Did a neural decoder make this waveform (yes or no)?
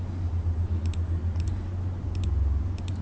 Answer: no